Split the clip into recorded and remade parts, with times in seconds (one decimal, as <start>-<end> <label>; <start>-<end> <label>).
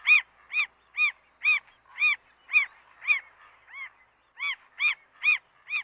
0.0-5.8 recorded